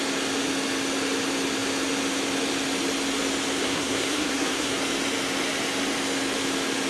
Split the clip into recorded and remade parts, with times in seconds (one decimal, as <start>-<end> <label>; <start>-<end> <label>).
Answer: 0.0-3.5 recorded; 3.5-4.8 remade; 4.8-6.9 recorded